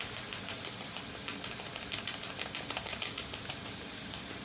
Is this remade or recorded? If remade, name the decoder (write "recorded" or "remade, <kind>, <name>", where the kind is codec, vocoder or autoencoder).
recorded